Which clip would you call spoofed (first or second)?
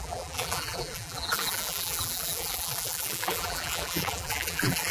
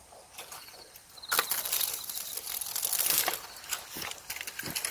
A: first